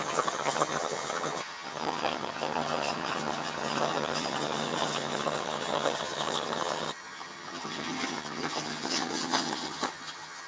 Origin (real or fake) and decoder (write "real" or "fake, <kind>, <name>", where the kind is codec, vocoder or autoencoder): fake, vocoder, HiFi-GAN